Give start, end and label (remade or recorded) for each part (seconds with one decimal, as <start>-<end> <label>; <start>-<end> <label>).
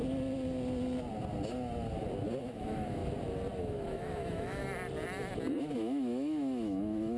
0.0-2.4 recorded; 2.4-3.0 remade; 3.0-3.6 recorded; 3.6-4.6 remade; 4.6-5.6 recorded; 5.6-7.2 remade